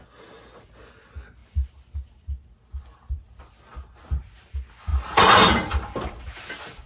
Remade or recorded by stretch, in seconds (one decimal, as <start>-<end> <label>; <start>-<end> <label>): 0.0-6.9 recorded